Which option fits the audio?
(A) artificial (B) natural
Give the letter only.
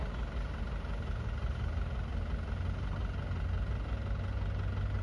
B